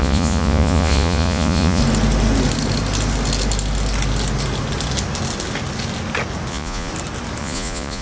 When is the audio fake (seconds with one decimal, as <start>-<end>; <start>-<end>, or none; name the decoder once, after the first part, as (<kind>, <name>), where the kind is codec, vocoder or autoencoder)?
0.0-1.8 (vocoder, Vocos); 6.5-6.9; 7.4-8.0